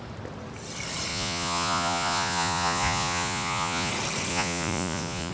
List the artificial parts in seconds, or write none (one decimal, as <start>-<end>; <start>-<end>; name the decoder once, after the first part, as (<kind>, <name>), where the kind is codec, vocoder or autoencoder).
1.1-3.9 (vocoder, Vocos); 4.3-5.3